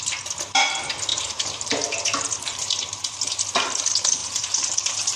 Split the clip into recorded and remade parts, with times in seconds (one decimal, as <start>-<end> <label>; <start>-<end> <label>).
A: 0.0-1.1 recorded; 1.1-3.2 remade; 3.2-4.2 recorded; 4.2-5.2 remade